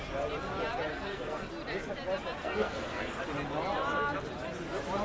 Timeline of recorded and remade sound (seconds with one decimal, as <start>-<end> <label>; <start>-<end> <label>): 0.0-0.9 recorded; 0.9-1.5 remade; 1.5-2.4 recorded; 2.4-3.2 remade; 3.2-5.0 recorded